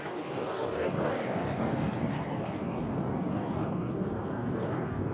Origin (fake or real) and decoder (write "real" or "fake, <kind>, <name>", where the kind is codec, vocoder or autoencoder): fake, codec, DAC